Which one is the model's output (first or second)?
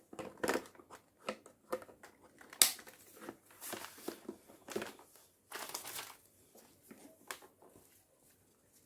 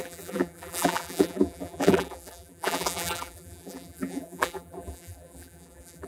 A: second